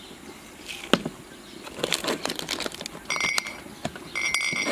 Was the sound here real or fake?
real